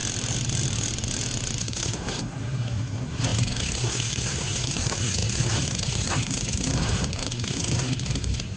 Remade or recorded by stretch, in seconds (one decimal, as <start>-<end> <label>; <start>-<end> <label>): 0.0-1.6 recorded; 1.6-8.6 remade

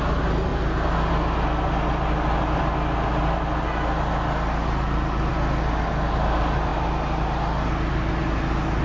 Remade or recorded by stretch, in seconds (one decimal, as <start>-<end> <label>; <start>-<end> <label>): 0.0-8.8 recorded

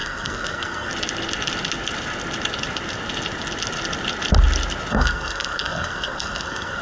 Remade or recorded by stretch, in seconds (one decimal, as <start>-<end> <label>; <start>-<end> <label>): 0.0-0.9 remade; 0.9-4.9 recorded; 4.9-6.8 remade

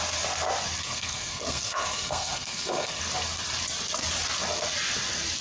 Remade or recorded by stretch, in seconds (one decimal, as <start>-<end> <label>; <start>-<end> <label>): 0.0-0.8 recorded; 0.8-3.0 remade; 3.0-5.4 recorded

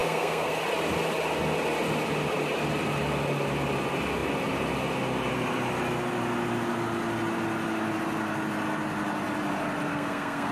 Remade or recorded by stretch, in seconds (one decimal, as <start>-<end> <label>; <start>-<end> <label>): 0.0-0.6 remade; 0.6-9.9 recorded; 9.9-10.5 remade

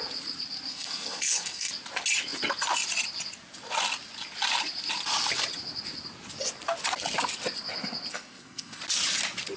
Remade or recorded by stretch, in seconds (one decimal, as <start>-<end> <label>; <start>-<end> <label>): 0.0-0.7 recorded; 0.7-1.7 remade; 1.7-8.1 recorded; 8.1-8.8 remade; 8.8-9.6 recorded

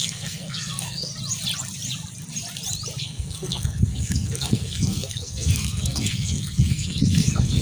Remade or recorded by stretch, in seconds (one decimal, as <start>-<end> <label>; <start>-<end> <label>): 0.0-1.1 remade; 1.1-3.0 recorded; 3.0-7.6 remade

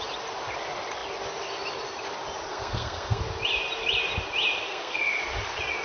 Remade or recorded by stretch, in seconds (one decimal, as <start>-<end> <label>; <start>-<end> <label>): 0.0-2.5 recorded; 2.5-3.2 remade; 3.2-4.6 recorded; 4.6-5.2 remade; 5.2-5.8 recorded